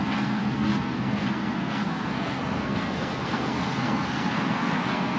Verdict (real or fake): fake